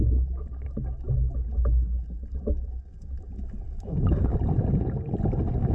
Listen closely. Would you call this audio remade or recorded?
recorded